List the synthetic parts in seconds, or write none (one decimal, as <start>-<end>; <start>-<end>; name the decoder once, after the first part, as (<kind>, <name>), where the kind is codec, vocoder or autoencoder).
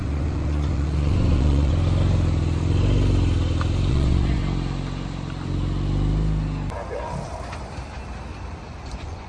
0.0-1.7 (vocoder, Vocos); 3.9-4.4; 8.7-9.3